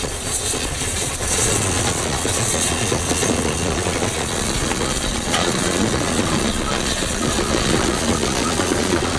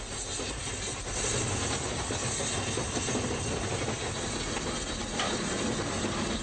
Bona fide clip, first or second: second